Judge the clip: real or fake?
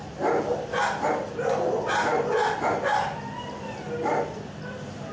real